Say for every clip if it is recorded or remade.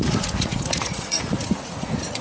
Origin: remade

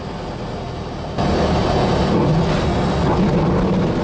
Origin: recorded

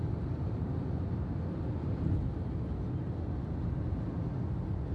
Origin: recorded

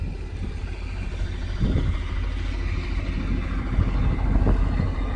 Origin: recorded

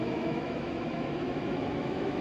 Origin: remade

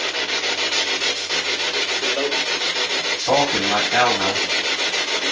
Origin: recorded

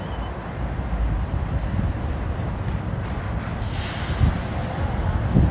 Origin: recorded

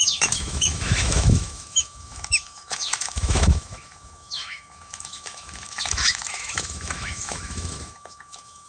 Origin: remade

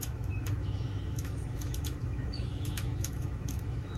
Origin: remade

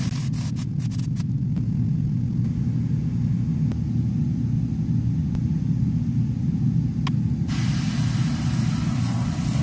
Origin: recorded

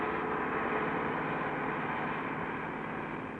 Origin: recorded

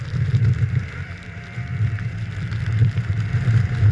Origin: remade